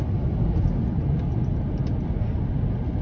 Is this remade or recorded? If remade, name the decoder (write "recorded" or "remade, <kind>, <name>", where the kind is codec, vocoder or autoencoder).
recorded